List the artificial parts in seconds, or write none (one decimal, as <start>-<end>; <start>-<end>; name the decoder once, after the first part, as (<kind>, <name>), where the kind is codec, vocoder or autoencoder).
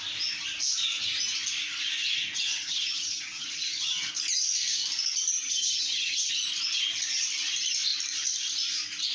2.5-4.1 (vocoder, HiFi-GAN); 5.4-6.3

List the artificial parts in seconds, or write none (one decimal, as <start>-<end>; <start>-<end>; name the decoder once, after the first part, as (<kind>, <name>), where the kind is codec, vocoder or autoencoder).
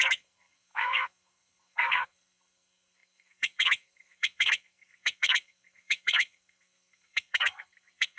0.0-8.2 (codec, SNAC)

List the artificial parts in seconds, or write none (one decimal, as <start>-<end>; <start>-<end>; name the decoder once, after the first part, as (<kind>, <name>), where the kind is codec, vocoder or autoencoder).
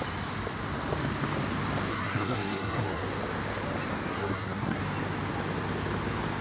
1.9-3.0 (codec, SNAC); 4.1-4.8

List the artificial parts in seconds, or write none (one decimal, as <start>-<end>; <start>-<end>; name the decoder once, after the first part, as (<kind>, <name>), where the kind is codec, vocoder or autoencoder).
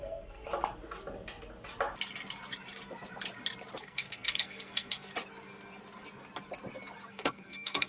0.0-0.5 (codec, SNAC); 3.8-5.1; 7.1-7.9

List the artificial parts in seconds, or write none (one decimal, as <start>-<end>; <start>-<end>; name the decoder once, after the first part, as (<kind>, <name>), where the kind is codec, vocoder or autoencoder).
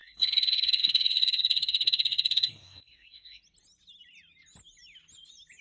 0.0-3.4 (codec, SNAC)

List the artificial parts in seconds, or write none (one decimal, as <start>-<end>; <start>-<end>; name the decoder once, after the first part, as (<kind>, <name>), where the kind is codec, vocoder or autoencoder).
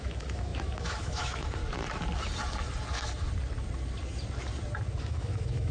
0.0-1.6 (autoencoder, DAC-VAE); 5.0-5.7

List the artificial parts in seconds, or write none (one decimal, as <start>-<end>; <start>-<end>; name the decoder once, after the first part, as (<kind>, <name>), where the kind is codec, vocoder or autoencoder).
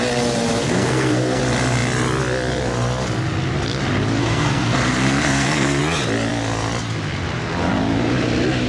0.6-1.4 (codec, SNAC); 4.2-5.8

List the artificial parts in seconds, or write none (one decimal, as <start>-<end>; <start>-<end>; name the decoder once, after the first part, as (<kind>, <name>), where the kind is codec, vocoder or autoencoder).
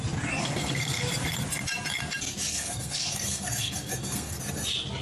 0.4-1.0 (codec, SNAC); 2.5-4.4